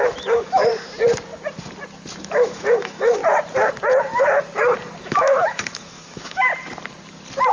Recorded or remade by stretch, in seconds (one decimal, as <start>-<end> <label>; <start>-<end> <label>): 0.0-0.7 remade; 0.7-2.2 recorded; 2.2-3.2 remade; 3.2-5.0 recorded; 5.0-6.5 remade; 6.5-7.5 recorded